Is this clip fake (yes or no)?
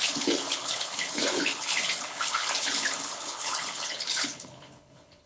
yes